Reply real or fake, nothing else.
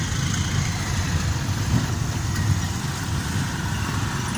real